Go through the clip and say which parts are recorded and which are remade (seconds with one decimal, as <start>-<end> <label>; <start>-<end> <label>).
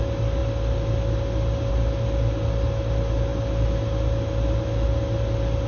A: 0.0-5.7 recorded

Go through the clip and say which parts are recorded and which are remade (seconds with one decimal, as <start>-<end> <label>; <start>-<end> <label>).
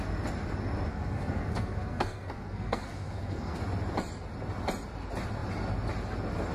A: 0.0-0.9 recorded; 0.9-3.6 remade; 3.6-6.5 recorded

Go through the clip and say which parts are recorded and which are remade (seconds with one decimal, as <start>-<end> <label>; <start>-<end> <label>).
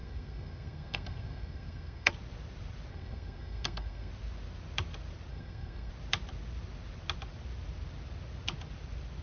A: 0.0-2.1 remade; 2.1-2.9 recorded; 2.9-4.1 remade; 4.1-5.3 recorded; 5.3-5.9 remade; 5.9-9.2 recorded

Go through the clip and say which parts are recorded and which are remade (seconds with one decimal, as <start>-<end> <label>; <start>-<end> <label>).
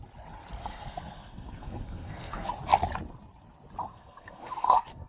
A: 0.0-0.6 recorded; 0.6-2.5 remade; 2.5-3.9 recorded; 3.9-5.1 remade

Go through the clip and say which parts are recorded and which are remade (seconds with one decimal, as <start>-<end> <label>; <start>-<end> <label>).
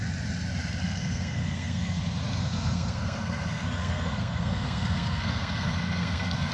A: 0.0-0.8 recorded; 0.8-2.0 remade; 2.0-2.4 recorded; 2.4-6.5 remade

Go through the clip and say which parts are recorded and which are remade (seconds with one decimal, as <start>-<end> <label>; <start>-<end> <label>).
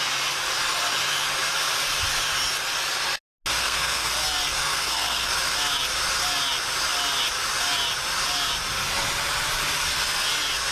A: 0.0-3.6 recorded; 3.6-4.1 remade; 4.1-4.6 recorded; 4.6-5.3 remade; 5.3-10.7 recorded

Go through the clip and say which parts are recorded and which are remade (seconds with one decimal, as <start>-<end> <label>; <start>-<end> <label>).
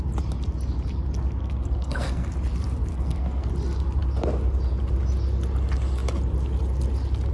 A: 0.0-1.4 recorded; 1.4-2.3 remade; 2.3-2.9 recorded; 2.9-3.5 remade; 3.5-7.3 recorded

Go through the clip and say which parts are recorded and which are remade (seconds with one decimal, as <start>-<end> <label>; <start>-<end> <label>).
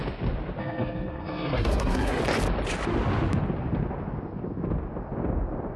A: 0.0-0.6 recorded; 0.6-2.2 remade; 2.2-5.8 recorded